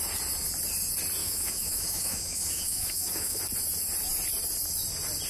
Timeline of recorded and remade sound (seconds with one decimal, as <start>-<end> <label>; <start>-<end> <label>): 0.0-1.2 recorded; 1.2-3.4 remade; 3.4-5.3 recorded